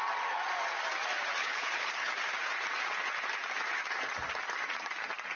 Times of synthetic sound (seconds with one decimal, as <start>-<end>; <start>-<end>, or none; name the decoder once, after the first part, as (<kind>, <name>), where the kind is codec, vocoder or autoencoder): 1.4-2.1 (codec, HILCodec)